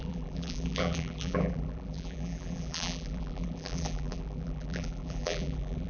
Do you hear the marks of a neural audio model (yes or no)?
yes